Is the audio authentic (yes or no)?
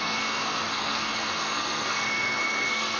no